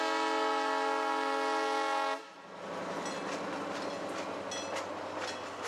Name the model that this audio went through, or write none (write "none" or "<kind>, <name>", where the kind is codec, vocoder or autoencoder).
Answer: none